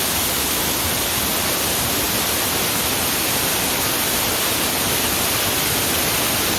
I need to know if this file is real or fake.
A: real